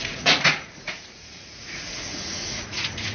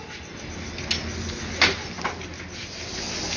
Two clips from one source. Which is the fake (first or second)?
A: first